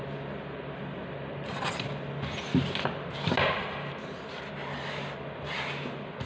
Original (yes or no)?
yes